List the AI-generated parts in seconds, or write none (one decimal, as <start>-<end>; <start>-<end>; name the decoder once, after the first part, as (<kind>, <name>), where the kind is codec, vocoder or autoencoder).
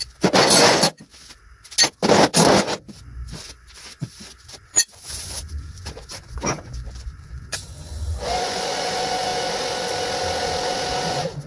0.0-1.1 (vocoder, Vocos); 2.5-9.3; 11.1-11.5